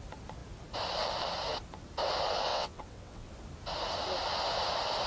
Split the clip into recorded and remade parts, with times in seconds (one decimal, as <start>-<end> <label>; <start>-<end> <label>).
0.0-2.5 recorded; 2.5-3.3 remade; 3.3-5.1 recorded